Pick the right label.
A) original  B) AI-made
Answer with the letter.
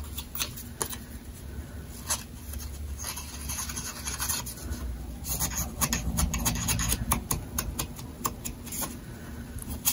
A